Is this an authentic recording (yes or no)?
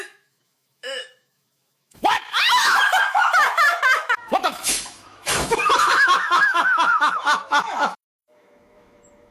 no